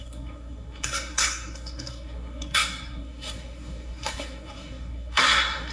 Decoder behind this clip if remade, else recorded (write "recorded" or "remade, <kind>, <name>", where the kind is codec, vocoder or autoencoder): remade, codec, SNAC